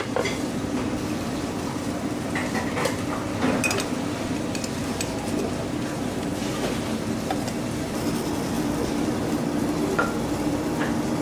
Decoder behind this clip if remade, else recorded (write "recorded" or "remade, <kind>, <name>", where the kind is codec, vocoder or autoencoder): recorded